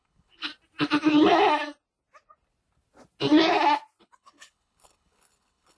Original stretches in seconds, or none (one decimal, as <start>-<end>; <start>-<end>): 0.5-4.0

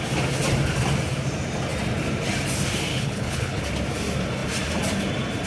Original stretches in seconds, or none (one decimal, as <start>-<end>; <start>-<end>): 0.0-2.9; 3.6-5.5

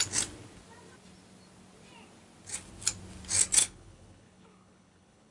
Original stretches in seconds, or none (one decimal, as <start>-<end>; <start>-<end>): 0.0-3.6